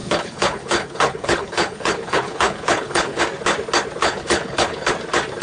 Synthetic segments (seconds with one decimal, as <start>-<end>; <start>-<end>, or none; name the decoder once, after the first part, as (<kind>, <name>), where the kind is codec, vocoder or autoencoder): 0.0-3.2 (codec, HILCodec); 4.0-4.9